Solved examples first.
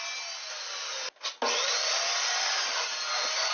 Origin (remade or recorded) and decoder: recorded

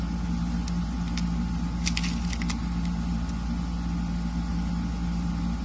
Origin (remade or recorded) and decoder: recorded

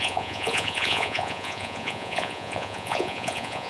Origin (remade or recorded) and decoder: remade, vocoder, Vocos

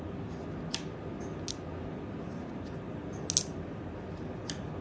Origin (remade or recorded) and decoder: recorded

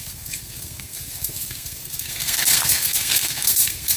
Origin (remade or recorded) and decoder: remade, codec, SNAC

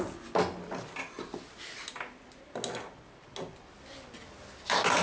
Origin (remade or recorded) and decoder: recorded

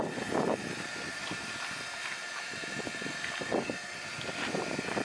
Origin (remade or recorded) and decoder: recorded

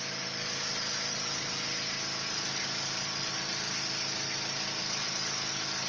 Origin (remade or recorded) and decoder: recorded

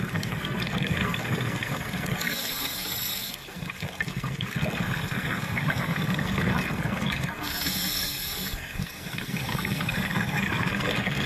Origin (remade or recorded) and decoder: remade, codec, SNAC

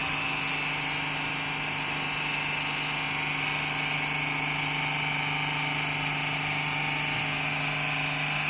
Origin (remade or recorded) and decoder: recorded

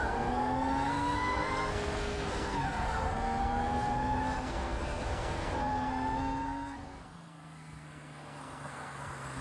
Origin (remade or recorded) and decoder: remade, codec, SNAC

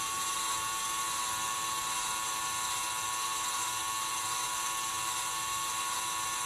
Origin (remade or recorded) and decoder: recorded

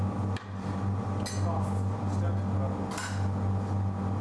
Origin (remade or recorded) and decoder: recorded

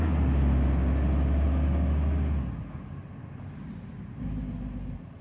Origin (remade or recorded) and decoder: recorded